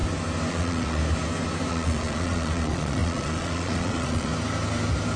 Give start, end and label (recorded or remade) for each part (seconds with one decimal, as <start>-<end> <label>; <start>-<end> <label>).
0.0-0.5 recorded; 0.5-1.0 remade; 1.0-1.7 recorded; 1.7-4.3 remade; 4.3-5.2 recorded